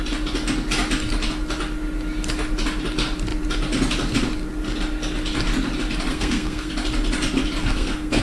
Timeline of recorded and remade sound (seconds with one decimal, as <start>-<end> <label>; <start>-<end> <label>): 0.0-6.1 recorded; 6.1-6.7 remade; 6.7-7.6 recorded; 7.6-8.2 remade